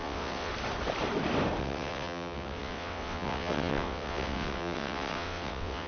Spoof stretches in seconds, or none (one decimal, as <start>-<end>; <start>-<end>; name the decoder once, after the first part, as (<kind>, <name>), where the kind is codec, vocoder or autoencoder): 0.0-0.5 (vocoder, WaveNeXt); 1.6-5.9